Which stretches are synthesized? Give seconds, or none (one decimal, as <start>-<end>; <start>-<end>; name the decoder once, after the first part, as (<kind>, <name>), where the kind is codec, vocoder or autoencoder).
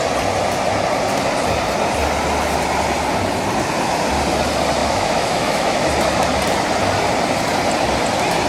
4.8-5.9 (autoencoder, DAC-VAE)